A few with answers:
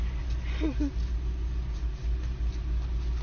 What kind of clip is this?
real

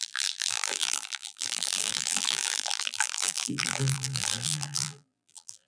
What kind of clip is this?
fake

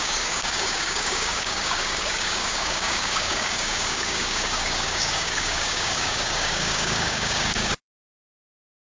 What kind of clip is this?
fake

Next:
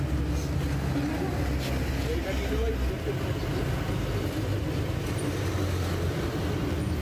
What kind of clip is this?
real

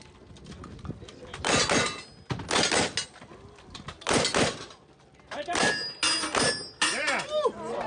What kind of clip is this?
real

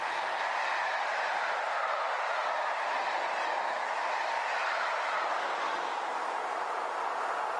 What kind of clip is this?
real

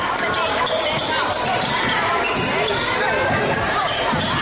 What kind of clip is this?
fake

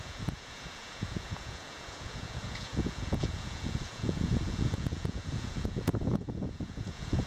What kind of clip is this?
fake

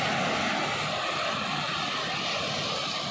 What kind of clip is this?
real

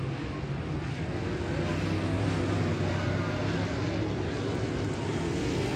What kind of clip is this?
real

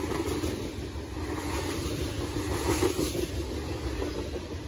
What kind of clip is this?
real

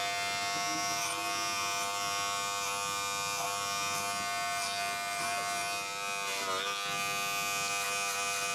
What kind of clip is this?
real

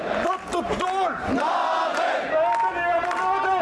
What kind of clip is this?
real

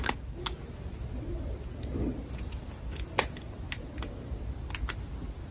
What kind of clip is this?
real